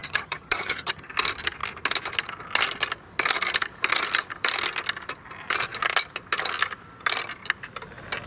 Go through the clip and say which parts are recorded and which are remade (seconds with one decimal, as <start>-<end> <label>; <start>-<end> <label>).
0.0-1.1 remade; 1.1-8.3 recorded